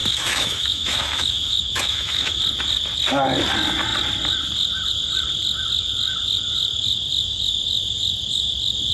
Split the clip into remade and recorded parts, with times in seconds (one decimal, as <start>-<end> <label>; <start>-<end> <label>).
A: 0.0-2.4 remade; 2.4-8.9 recorded